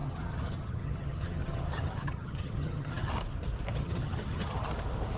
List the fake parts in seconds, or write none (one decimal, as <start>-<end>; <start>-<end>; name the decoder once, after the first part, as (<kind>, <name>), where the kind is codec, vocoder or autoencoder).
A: 0.0-3.1 (vocoder, HiFi-GAN); 3.7-4.7